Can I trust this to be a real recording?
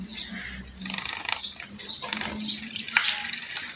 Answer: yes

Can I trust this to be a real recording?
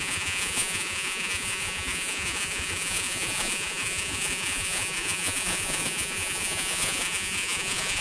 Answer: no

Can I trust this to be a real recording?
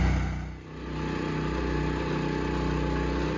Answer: yes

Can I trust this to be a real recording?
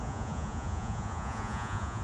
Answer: no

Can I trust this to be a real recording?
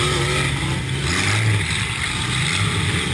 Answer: yes